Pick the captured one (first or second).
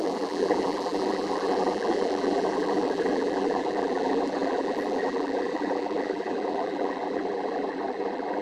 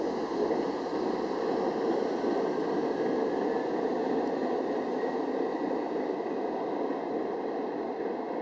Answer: second